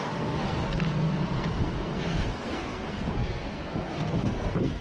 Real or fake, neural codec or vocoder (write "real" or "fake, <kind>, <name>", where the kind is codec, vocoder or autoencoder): fake, codec, SNAC